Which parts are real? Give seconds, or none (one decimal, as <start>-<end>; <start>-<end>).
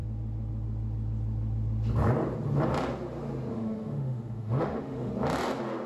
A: 0.0-3.5; 5.1-5.9